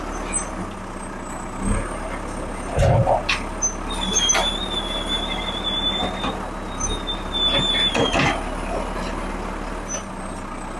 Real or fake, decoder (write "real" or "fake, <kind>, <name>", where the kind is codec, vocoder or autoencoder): real